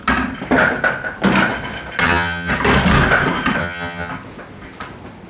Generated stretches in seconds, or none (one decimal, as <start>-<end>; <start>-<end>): 2.0-2.5; 3.6-4.1